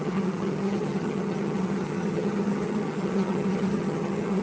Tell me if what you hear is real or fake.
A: fake